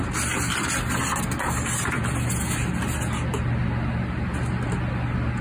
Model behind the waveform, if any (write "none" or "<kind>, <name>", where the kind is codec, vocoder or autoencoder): none